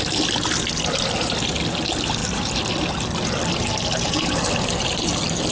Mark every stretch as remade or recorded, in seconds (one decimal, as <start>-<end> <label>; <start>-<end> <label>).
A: 0.0-5.5 recorded